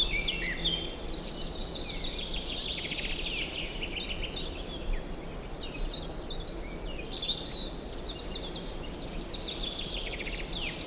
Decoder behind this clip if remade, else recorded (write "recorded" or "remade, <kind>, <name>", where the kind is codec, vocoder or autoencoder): recorded